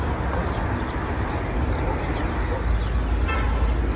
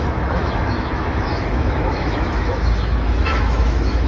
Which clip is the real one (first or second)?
first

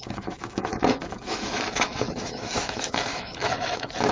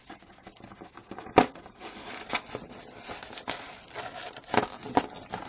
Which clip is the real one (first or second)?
second